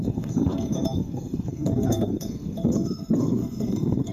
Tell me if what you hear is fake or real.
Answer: fake